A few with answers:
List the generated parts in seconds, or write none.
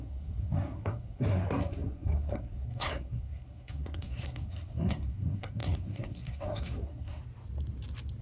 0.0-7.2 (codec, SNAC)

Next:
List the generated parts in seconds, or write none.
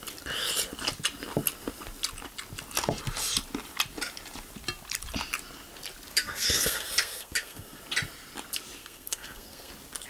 6.1-7.8 (codec, SNAC); 8.8-9.7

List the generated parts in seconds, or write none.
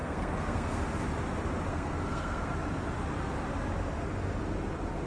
0.0-0.8 (codec, SNAC); 1.7-2.5